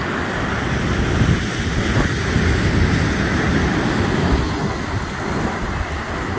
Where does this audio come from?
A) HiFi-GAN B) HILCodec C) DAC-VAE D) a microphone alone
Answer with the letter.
D